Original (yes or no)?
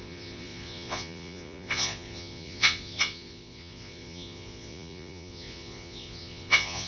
no